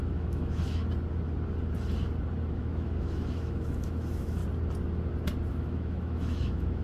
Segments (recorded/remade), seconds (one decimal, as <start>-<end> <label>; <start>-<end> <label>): 0.0-0.8 remade; 0.8-2.5 recorded; 2.5-4.4 remade; 4.4-5.5 recorded; 5.5-6.8 remade